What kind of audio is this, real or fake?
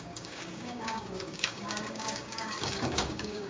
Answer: fake